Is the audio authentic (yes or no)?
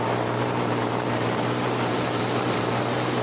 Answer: no